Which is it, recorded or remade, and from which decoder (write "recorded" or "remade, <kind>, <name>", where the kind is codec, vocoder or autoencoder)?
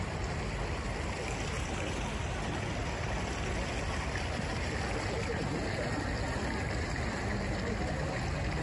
recorded